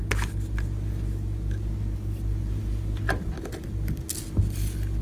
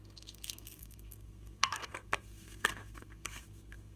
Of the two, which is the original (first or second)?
first